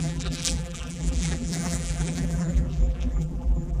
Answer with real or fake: fake